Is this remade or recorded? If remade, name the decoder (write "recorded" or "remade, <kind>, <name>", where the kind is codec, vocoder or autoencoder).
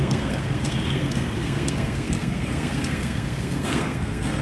remade, codec, SNAC